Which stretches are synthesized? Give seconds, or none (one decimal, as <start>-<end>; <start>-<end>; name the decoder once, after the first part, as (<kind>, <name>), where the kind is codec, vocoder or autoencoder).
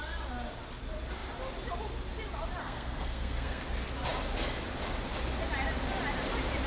2.6-3.6 (codec, SNAC)